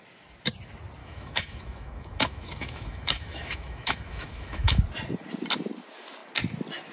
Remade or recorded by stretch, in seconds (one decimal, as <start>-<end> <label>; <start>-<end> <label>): 0.0-1.0 recorded; 1.0-4.8 remade; 4.8-6.9 recorded